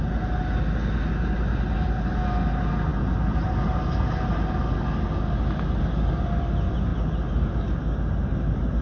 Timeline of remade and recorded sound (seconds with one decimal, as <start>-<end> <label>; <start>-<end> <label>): 0.0-8.8 recorded